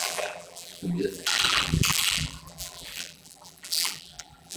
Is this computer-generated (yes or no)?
yes